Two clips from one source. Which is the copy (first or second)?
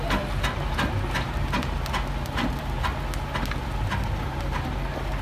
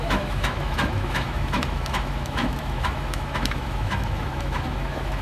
second